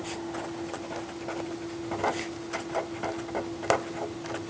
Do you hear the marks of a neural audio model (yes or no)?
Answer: no